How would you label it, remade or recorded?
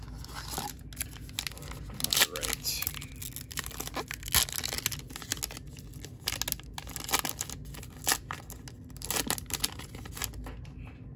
recorded